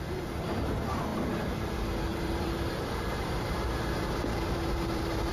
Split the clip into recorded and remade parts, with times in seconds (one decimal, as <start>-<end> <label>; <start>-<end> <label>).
0.0-2.1 recorded; 2.1-5.3 remade